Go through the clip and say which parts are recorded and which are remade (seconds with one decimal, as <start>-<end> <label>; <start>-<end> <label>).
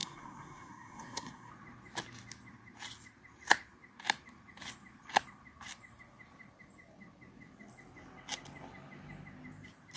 0.0-1.5 remade; 1.5-10.0 recorded